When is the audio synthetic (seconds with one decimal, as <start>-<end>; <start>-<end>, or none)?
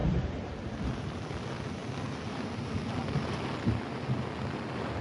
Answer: none